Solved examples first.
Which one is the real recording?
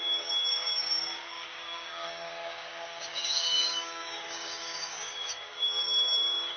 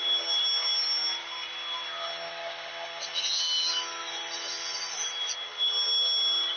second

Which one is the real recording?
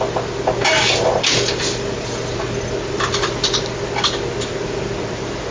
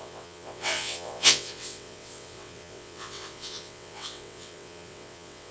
first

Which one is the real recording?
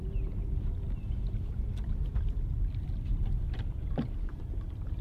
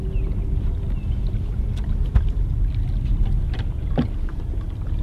second